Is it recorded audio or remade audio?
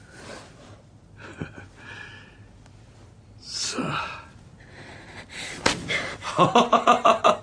recorded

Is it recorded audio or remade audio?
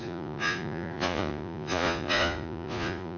remade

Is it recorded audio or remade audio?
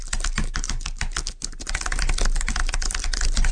recorded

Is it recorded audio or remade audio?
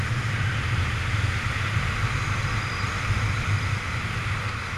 recorded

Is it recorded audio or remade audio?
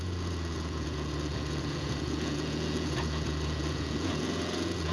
remade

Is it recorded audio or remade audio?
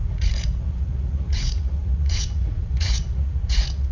remade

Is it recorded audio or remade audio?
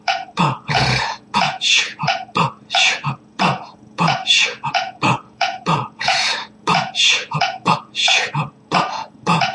remade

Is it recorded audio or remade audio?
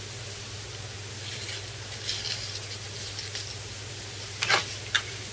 recorded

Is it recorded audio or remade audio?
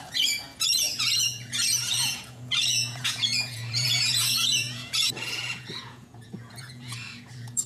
remade